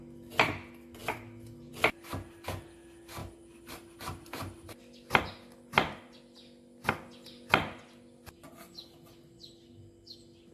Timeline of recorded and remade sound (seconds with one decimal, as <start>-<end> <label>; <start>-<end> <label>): 0.0-10.5 recorded